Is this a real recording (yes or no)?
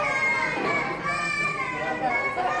yes